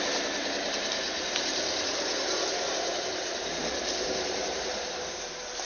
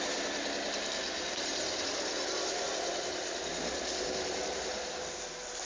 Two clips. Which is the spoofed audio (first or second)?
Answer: first